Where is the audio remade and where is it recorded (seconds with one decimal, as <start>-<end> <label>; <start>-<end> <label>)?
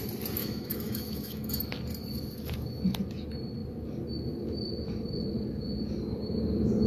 0.0-0.4 recorded; 0.4-1.6 remade; 1.6-6.9 recorded